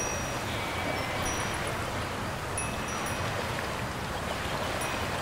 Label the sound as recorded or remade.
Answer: recorded